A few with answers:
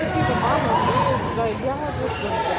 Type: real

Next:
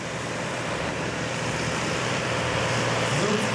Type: fake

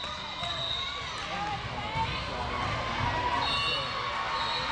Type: real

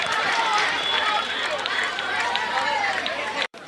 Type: fake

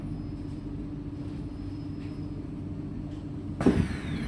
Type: real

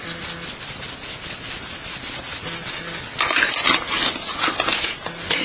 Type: real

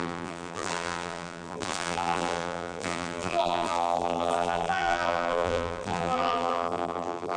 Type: fake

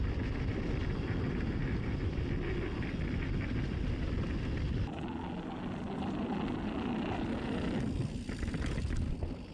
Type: real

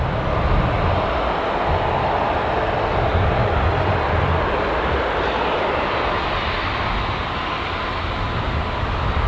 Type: real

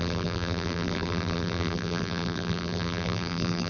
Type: fake